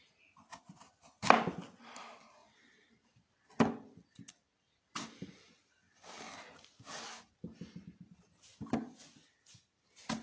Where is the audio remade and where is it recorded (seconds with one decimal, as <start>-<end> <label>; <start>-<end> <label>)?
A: 0.0-2.4 recorded; 2.4-6.1 remade; 6.1-10.2 recorded